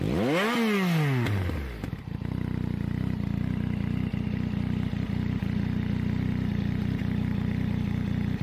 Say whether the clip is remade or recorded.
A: recorded